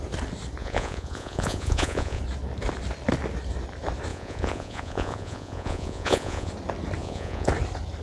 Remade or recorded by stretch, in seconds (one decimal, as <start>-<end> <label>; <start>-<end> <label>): 0.0-0.6 recorded; 0.6-2.2 remade; 2.2-4.1 recorded; 4.1-6.5 remade; 6.5-7.0 recorded; 7.0-7.5 remade; 7.5-8.0 recorded